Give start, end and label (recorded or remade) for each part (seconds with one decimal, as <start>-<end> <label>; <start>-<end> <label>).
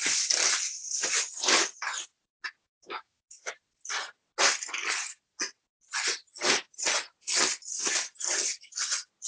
0.0-2.6 recorded; 2.6-3.5 remade; 3.5-9.3 recorded